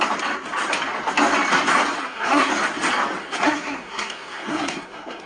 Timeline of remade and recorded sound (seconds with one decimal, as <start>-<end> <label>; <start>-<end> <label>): 0.0-2.0 recorded; 2.0-2.5 remade; 2.5-3.2 recorded; 3.2-5.3 remade